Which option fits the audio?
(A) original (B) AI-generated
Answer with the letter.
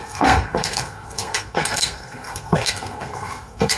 B